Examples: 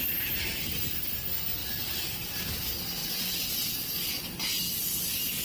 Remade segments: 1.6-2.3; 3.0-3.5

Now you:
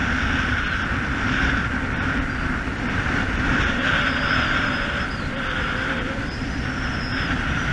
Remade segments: none

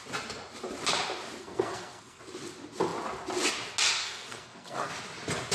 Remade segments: 1.4-2.2; 4.0-4.9

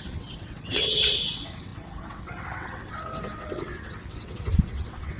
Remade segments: 0.0-5.2

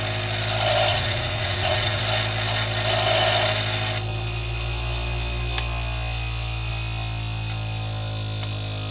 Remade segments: 0.9-2.0